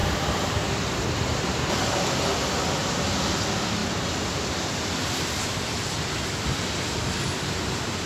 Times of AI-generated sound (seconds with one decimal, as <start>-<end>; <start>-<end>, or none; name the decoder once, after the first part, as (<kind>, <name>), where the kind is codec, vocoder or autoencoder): 1.3-1.8 (vocoder, BigVGAN v2); 3.8-8.1